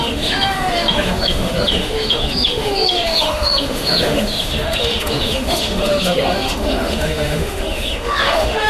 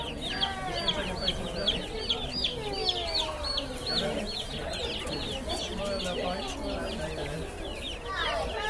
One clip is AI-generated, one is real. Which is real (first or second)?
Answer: second